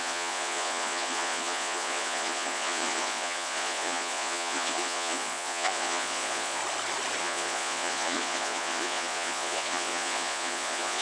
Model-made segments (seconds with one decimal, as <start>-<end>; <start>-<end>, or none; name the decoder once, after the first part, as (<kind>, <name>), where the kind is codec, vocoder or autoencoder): 0.0-6.6 (vocoder, Vocos); 7.2-11.0